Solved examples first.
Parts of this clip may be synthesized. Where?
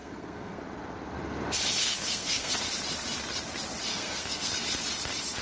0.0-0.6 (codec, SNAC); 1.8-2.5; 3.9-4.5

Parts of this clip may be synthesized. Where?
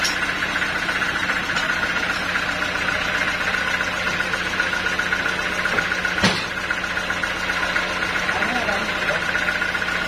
1.2-2.2 (vocoder, BigVGAN v2)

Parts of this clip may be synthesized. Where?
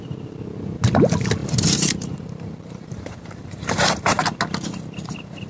1.4-4.4 (vocoder, BigVGAN v2)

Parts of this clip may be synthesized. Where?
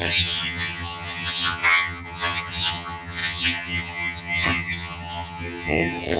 0.0-6.2 (vocoder, HiFi-GAN)